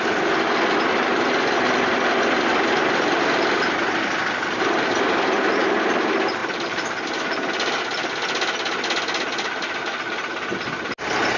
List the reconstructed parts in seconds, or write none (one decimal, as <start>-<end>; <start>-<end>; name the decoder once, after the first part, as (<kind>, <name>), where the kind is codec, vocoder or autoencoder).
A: none